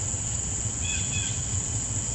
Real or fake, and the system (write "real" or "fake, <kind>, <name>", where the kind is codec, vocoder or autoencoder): fake, vocoder, WaveNeXt